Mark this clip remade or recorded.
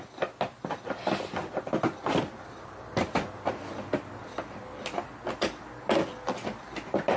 recorded